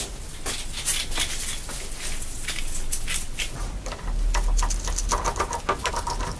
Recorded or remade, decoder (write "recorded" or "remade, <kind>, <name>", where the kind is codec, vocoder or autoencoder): recorded